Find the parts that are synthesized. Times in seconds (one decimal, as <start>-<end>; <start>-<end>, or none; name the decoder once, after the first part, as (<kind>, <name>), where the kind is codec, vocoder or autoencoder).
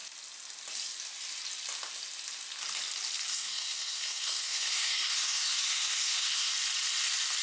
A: 3.3-6.5 (codec, SNAC)